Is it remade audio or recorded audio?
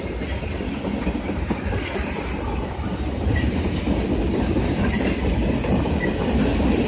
recorded